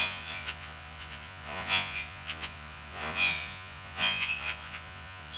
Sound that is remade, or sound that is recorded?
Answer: remade